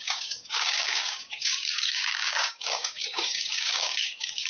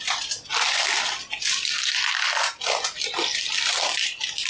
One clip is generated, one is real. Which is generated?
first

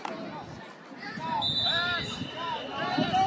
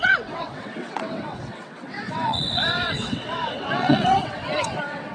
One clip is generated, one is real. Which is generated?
second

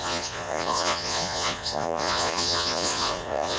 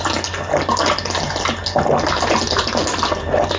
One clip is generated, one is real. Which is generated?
first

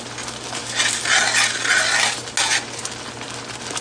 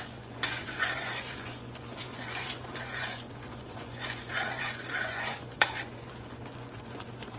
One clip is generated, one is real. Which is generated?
second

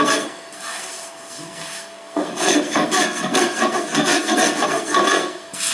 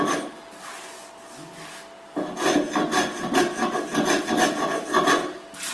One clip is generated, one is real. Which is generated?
first